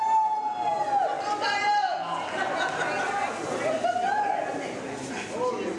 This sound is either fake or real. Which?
real